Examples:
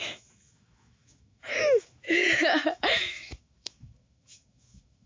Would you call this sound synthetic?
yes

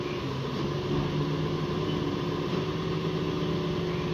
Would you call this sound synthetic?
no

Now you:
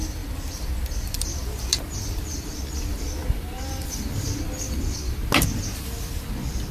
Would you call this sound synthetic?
no